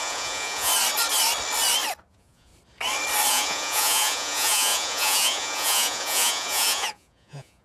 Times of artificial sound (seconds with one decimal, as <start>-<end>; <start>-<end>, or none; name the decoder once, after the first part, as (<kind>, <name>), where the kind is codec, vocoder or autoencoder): 0.0-0.7 (vocoder, Vocos); 2.1-2.5; 3.3-7.6